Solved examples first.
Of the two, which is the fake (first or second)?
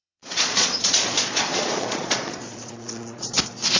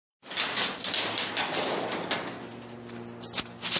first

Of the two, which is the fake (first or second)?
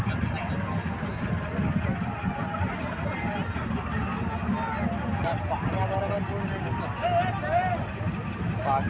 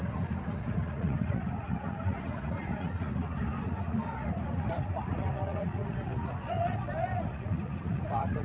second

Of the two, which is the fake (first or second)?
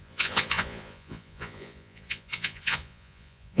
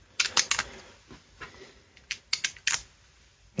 first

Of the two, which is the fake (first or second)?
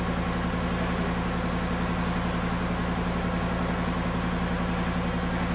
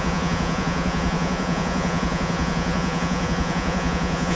second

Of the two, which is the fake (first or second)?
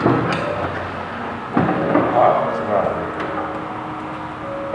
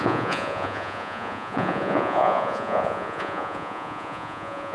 second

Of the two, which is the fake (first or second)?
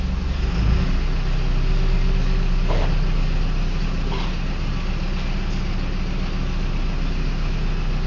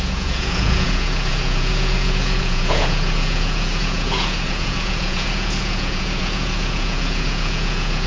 second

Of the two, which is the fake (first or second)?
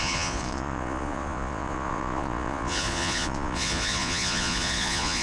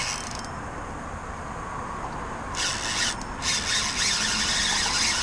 first